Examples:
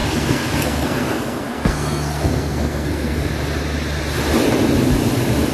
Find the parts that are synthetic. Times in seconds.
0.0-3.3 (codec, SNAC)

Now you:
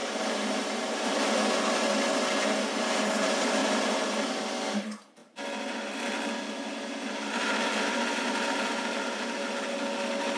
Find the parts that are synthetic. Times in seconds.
0.0-1.3 (vocoder, BigVGAN v2); 3.6-4.4

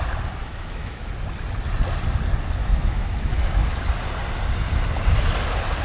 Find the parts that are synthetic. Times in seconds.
0.4-1.1 (autoencoder, DAC-VAE); 2.6-3.8

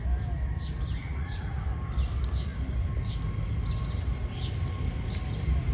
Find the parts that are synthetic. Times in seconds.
1.0-1.6 (vocoder, Vocos)